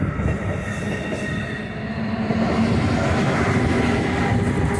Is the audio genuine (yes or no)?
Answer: yes